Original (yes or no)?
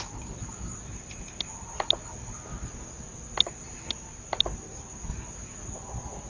yes